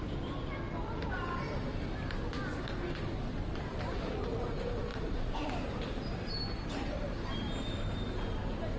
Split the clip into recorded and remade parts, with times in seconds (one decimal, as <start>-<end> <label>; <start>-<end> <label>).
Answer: 0.0-4.9 recorded; 4.9-6.4 remade; 6.4-8.8 recorded